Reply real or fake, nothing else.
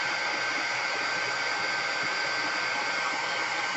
real